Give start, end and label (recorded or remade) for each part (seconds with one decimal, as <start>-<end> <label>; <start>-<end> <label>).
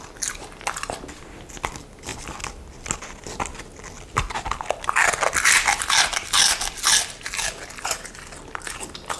0.0-9.2 recorded